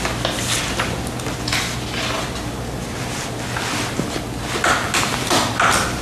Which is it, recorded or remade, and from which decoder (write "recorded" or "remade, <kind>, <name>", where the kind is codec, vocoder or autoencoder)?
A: recorded